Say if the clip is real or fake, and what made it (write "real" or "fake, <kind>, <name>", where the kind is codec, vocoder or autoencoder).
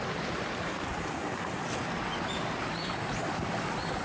real